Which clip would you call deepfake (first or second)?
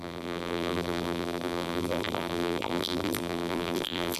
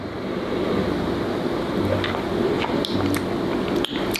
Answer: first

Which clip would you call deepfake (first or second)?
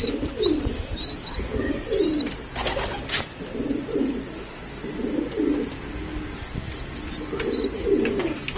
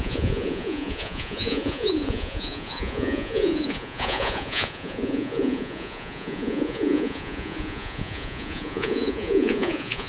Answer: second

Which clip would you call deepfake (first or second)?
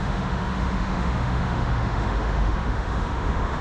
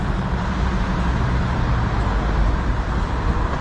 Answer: first